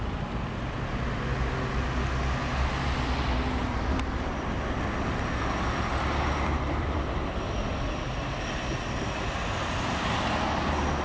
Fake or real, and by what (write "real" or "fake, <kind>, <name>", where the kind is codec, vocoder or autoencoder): real